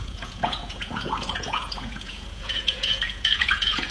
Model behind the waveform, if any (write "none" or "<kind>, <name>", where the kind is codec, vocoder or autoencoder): vocoder, Vocos